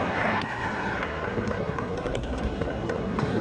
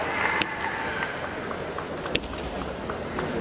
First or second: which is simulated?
first